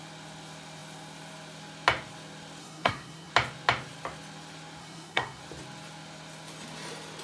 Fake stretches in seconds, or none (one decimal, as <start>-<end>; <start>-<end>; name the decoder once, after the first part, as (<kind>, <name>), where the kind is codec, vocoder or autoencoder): 2.6-3.3 (codec, SNAC); 4.8-5.4